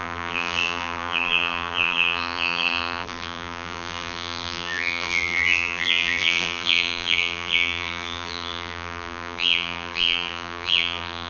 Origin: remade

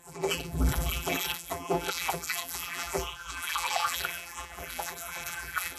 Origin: remade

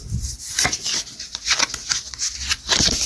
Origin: recorded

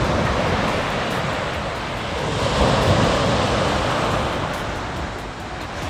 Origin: recorded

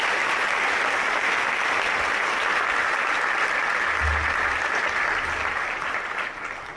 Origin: recorded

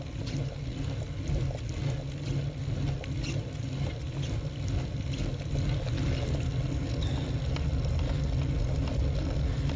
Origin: recorded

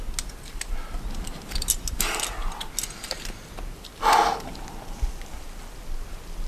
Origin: recorded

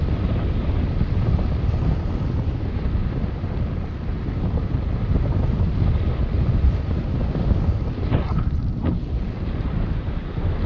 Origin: remade